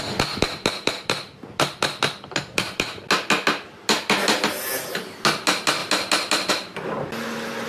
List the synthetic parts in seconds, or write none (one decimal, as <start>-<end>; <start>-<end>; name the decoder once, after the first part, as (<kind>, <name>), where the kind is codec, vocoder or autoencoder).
none